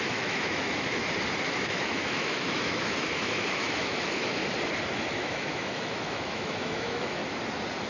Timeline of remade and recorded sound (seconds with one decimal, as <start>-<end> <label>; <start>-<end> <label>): 0.0-1.0 remade; 1.0-1.5 recorded; 1.5-4.4 remade; 4.4-5.1 recorded; 5.1-7.2 remade; 7.2-7.9 recorded